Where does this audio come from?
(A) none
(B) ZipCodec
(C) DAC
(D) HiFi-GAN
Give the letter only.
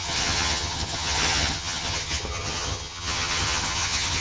D